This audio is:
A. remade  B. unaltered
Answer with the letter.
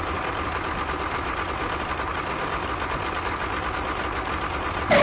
B